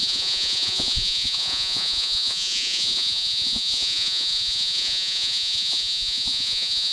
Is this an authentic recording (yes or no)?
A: no